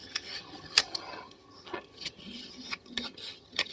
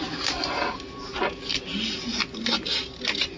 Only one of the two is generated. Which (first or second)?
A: first